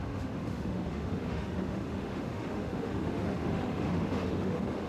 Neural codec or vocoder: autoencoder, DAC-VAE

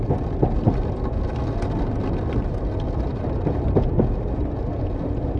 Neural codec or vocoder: none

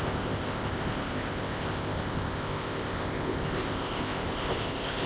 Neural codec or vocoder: codec, ZipCodec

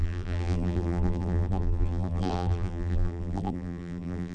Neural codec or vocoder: vocoder, BigVGAN v2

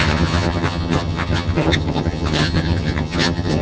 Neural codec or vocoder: vocoder, HiFi-GAN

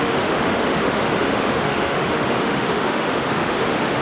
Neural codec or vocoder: autoencoder, DAC-VAE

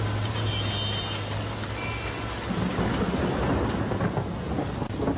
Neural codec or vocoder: none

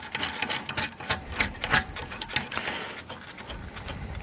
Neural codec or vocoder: none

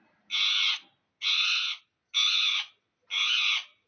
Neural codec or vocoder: none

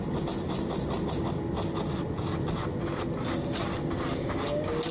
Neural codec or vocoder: none